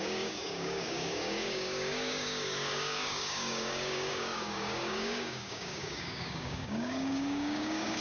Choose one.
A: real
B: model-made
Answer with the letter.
B